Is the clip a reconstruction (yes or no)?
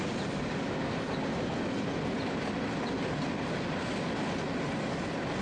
no